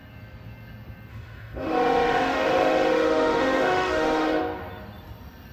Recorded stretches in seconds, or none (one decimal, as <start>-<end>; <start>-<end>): 0.0-1.1; 4.4-5.5